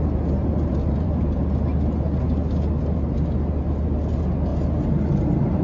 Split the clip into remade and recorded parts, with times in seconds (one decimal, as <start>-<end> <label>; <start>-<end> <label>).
0.0-0.4 recorded; 0.4-1.4 remade; 1.4-5.6 recorded